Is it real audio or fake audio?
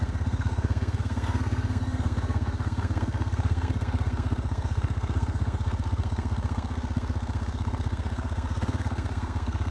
fake